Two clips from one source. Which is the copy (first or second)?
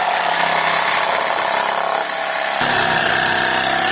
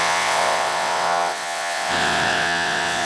second